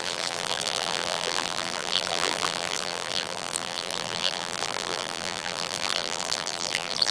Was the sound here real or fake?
fake